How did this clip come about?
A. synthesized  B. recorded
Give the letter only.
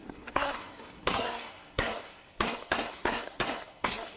A